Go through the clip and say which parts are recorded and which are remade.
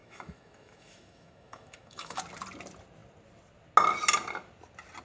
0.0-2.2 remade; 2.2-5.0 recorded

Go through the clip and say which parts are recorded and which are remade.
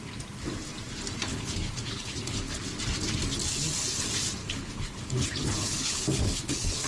0.0-1.3 recorded; 1.3-2.6 remade; 2.6-4.4 recorded; 4.4-6.9 remade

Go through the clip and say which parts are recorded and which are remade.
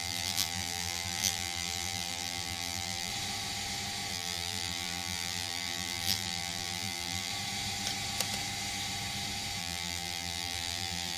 0.0-3.1 remade; 3.1-4.1 recorded; 4.1-7.3 remade; 7.3-9.6 recorded; 9.6-11.2 remade